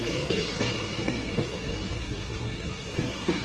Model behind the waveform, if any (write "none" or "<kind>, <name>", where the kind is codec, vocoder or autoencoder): codec, SNAC